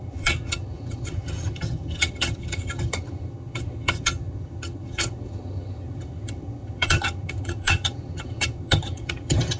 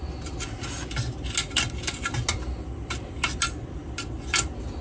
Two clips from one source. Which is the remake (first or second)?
first